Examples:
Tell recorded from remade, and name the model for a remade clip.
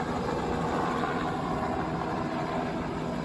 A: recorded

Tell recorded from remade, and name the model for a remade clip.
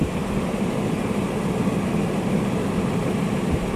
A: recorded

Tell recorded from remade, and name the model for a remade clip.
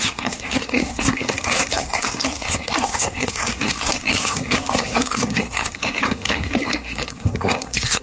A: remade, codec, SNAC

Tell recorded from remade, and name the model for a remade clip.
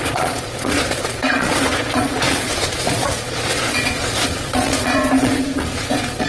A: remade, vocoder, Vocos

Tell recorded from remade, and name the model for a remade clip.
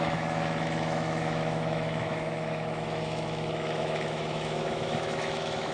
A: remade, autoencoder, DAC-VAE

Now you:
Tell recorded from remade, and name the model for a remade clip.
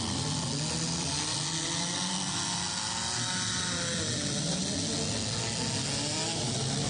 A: recorded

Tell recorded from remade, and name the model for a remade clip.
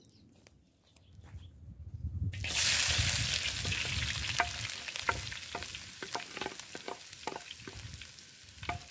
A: recorded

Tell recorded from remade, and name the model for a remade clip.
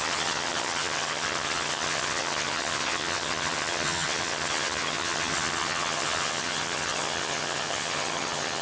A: remade, vocoder, HiFi-GAN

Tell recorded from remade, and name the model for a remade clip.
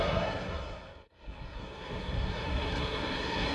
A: remade, codec, SNAC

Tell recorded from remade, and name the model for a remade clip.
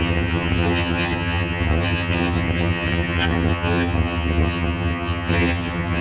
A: remade, vocoder, HiFi-GAN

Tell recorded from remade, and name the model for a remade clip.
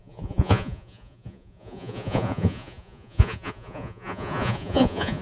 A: remade, vocoder, Vocos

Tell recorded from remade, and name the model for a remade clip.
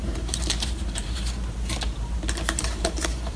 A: remade, vocoder, BigVGAN v2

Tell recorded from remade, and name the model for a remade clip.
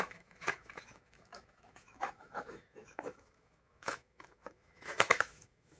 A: remade, autoencoder, DAC-VAE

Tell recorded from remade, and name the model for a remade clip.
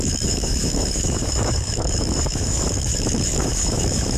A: remade, autoencoder, DAC-VAE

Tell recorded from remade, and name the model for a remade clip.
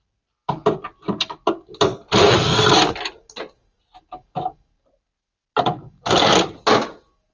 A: recorded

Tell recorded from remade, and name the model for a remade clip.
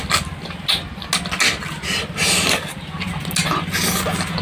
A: recorded